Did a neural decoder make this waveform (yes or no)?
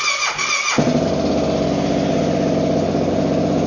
no